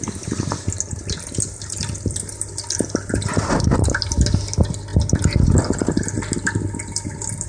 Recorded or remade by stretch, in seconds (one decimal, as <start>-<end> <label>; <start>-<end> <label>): 0.0-7.5 recorded